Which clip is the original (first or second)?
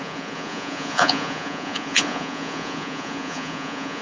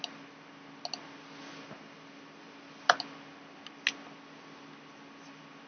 second